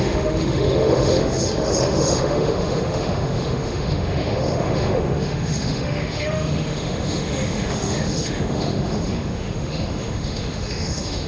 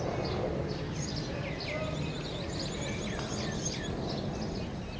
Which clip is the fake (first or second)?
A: first